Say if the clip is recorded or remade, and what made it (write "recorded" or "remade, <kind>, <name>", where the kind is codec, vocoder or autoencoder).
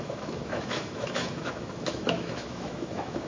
remade, autoencoder, DAC-VAE